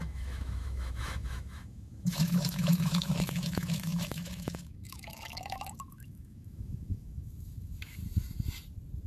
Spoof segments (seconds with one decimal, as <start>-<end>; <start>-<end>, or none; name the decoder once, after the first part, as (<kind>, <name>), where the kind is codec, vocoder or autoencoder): 0.0-8.0 (autoencoder, DAC-VAE)